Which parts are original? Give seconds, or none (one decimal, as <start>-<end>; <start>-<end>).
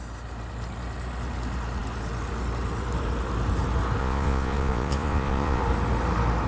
0.0-4.0; 5.6-6.5